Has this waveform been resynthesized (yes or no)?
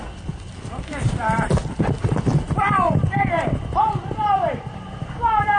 yes